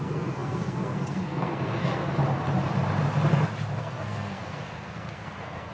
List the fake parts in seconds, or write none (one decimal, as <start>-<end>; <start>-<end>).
0.0-2.2; 3.8-5.7